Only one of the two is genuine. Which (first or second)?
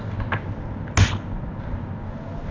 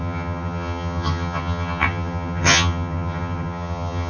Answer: first